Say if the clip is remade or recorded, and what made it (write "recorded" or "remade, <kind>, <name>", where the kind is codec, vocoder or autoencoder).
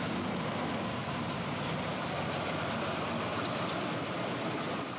remade, vocoder, BigVGAN v2